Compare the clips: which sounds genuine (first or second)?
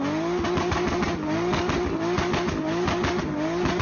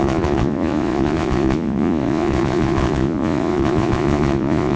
first